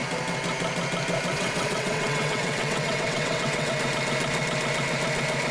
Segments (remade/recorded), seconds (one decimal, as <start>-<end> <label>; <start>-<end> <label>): 0.0-1.3 recorded; 1.3-3.7 remade; 3.7-5.5 recorded